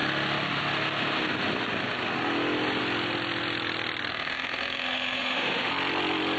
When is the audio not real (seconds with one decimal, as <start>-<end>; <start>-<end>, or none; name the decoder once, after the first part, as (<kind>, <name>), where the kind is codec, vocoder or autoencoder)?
4.1-5.7 (autoencoder, DAC-VAE)